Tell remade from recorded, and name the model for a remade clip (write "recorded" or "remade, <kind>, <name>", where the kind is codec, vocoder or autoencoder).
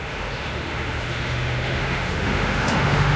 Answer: remade, autoencoder, DAC-VAE